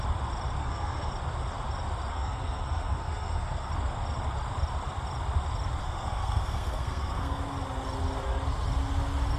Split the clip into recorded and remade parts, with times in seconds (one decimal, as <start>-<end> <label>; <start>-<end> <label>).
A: 0.0-0.6 recorded; 0.6-1.1 remade; 1.1-2.1 recorded; 2.1-3.7 remade; 3.7-5.8 recorded; 5.8-7.4 remade; 7.4-9.4 recorded